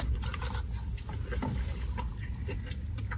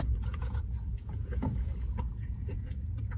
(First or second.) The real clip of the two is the first